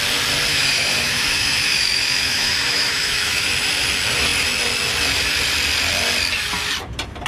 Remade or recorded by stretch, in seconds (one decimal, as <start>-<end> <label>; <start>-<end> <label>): 0.0-0.5 recorded; 0.5-3.5 remade; 3.5-7.3 recorded